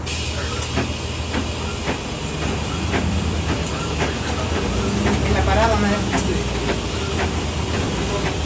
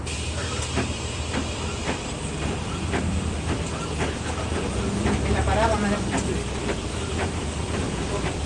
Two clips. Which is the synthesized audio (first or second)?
second